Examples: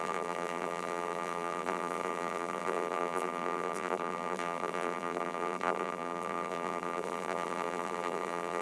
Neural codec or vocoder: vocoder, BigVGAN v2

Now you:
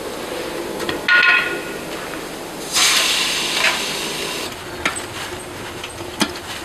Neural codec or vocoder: none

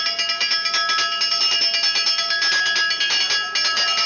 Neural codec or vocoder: none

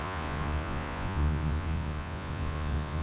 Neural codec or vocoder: vocoder, Vocos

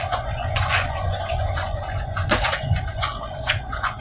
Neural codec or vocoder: vocoder, Vocos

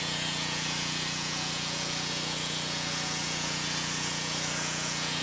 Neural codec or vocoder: vocoder, Vocos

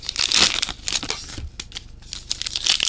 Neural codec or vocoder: none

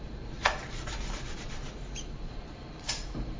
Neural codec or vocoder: vocoder, BigVGAN v2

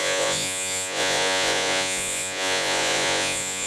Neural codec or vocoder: vocoder, Vocos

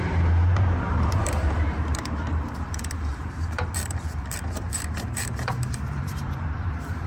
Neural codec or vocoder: vocoder, BigVGAN v2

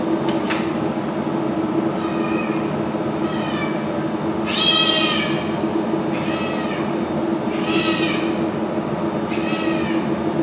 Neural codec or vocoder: none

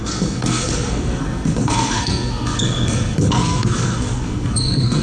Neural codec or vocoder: codec, SNAC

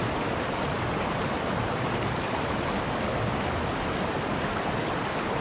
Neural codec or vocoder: none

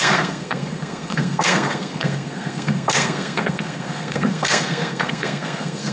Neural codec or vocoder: codec, SNAC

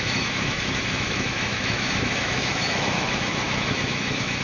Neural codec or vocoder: autoencoder, DAC-VAE